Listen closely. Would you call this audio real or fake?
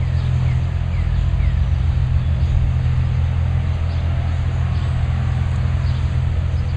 real